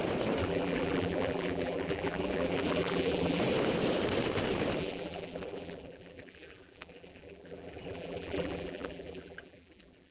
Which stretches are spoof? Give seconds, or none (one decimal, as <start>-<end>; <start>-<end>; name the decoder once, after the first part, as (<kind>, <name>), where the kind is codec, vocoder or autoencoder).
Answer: 0.4-3.4 (vocoder, BigVGAN v2); 4.8-10.1